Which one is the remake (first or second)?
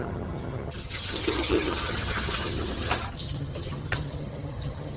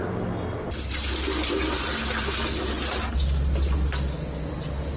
first